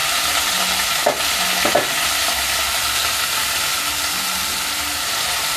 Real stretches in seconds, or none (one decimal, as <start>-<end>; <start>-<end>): 0.0-5.6